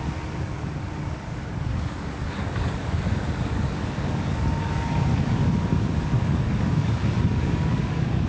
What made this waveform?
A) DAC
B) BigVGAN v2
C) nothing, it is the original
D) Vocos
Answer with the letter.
A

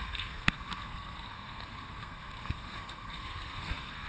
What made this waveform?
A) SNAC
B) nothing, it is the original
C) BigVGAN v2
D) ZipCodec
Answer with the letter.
A